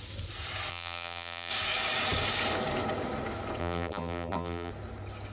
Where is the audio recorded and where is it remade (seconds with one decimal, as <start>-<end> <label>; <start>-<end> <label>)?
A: 0.0-0.7 recorded; 0.7-1.5 remade; 1.5-3.6 recorded; 3.6-4.7 remade; 4.7-5.3 recorded